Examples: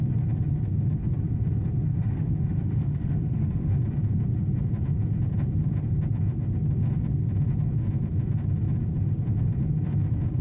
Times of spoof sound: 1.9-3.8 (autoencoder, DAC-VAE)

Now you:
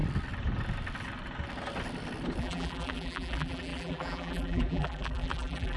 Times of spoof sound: 2.4-5.8 (vocoder, BigVGAN v2)

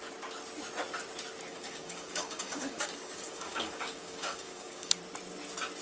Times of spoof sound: 1.5-5.0 (codec, DAC)

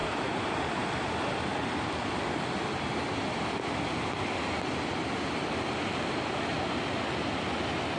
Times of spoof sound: 0.0-0.9 (vocoder, BigVGAN v2)

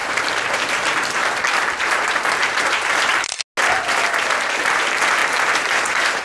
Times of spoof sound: 0.0-3.1 (vocoder, BigVGAN v2); 4.6-5.2; 5.7-6.2

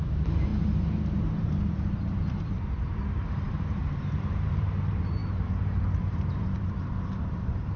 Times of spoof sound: 0.0-7.8 (vocoder, BigVGAN v2)